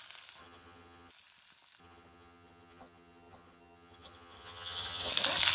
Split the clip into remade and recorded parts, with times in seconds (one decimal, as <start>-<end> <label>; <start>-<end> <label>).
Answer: 0.0-0.4 recorded; 0.4-1.1 remade; 1.1-1.8 recorded; 1.8-5.1 remade; 5.1-5.5 recorded